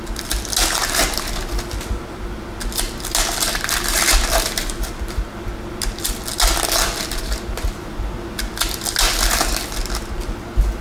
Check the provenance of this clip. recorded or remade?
recorded